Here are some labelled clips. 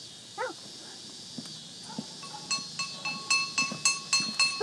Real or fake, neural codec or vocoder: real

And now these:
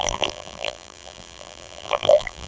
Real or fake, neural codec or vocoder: fake, vocoder, BigVGAN v2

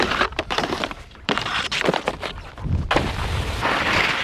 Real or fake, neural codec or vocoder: fake, vocoder, BigVGAN v2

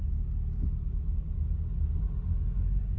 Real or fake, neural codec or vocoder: real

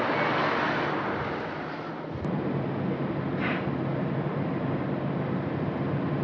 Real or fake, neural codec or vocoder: real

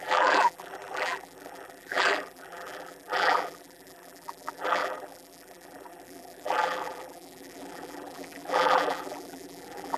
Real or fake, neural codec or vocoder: fake, vocoder, BigVGAN v2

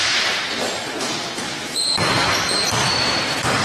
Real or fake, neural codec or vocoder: fake, vocoder, BigVGAN v2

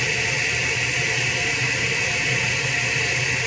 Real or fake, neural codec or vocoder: real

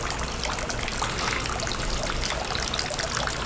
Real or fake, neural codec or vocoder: real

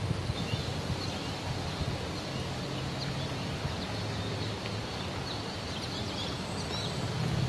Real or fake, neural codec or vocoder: real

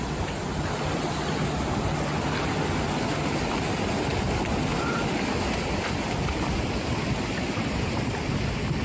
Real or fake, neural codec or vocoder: real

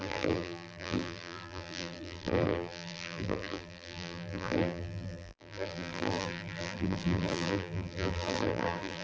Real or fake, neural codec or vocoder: fake, vocoder, BigVGAN v2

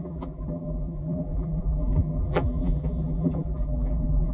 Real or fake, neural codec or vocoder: fake, vocoder, BigVGAN v2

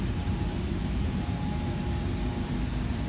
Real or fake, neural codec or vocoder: fake, vocoder, BigVGAN v2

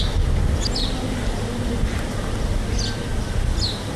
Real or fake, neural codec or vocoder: real